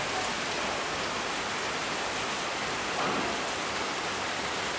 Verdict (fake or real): real